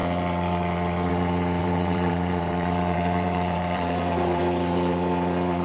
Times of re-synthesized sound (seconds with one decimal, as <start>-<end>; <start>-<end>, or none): 1.6-4.4